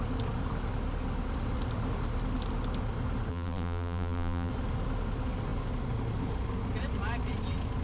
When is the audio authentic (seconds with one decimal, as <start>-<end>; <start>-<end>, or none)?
0.0-3.3; 4.5-7.8